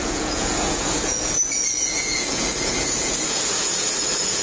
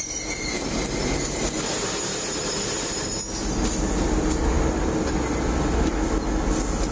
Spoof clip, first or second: first